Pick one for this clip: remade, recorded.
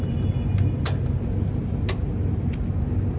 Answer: recorded